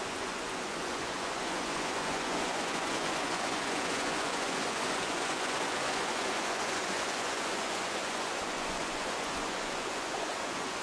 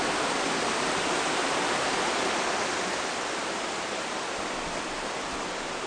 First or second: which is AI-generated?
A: first